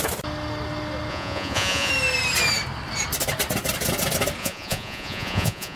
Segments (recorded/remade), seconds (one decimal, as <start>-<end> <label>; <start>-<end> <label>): 0.0-1.1 recorded; 1.1-1.9 remade; 1.9-4.4 recorded; 4.4-5.8 remade